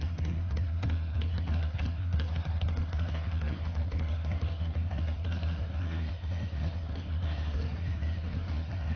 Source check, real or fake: fake